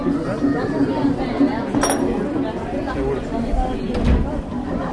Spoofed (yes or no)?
no